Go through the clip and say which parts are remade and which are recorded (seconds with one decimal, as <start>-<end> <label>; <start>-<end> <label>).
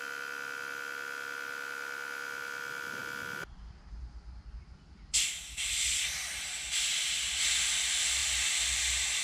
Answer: 0.0-9.2 recorded